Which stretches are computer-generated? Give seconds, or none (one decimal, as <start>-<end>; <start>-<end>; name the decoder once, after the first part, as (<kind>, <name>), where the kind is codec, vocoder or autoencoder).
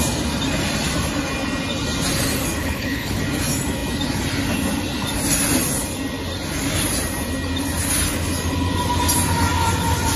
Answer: 2.6-3.2 (codec, HILCodec)